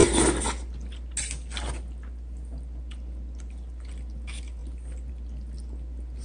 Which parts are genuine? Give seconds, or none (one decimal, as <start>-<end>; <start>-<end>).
0.0-6.2